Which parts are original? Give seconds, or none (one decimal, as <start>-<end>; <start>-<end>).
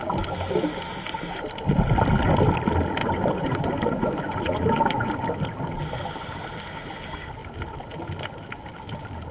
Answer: 0.0-3.0; 5.1-9.3